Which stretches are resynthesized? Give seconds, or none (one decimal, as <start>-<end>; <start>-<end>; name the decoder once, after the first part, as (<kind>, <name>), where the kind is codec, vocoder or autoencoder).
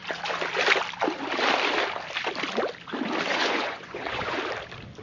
3.3-4.4 (vocoder, Vocos)